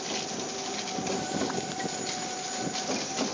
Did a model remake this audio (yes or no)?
no